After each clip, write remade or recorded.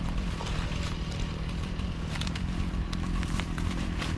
recorded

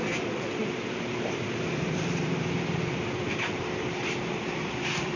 remade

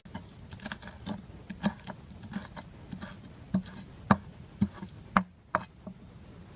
recorded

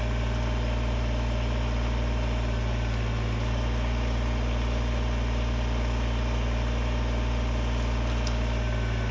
recorded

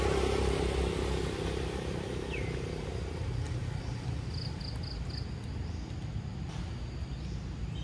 recorded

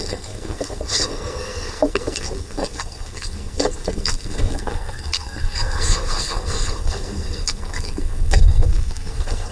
remade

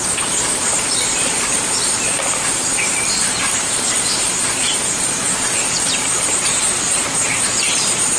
remade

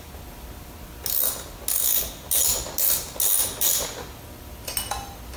recorded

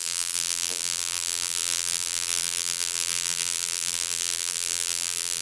remade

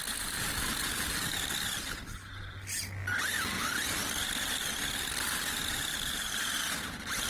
recorded